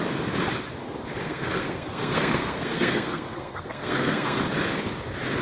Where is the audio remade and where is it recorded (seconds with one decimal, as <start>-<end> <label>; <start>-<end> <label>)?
0.0-1.2 recorded; 1.2-4.4 remade; 4.4-5.4 recorded